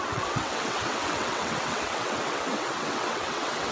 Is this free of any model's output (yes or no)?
no